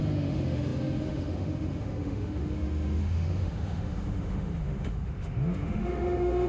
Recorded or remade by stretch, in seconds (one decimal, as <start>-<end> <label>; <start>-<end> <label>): 0.0-6.5 remade